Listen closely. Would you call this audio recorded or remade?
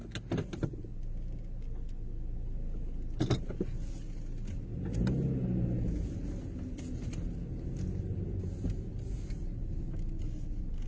recorded